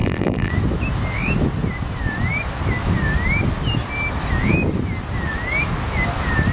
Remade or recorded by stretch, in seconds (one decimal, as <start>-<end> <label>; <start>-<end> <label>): 0.0-0.5 remade; 0.5-6.5 recorded